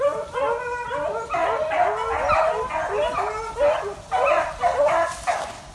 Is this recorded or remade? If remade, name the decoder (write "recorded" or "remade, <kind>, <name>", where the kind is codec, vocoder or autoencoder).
recorded